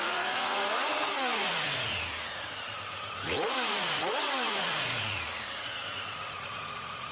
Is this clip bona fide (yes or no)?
no